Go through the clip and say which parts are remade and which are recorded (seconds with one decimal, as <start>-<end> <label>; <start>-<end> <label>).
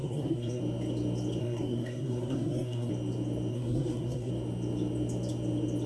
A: 0.0-0.6 remade; 0.6-1.4 recorded; 1.4-2.9 remade; 2.9-3.5 recorded; 3.5-4.3 remade; 4.3-5.9 recorded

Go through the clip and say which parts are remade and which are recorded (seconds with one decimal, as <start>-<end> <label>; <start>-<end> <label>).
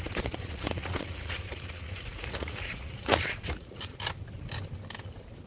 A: 0.0-3.9 remade; 3.9-5.5 recorded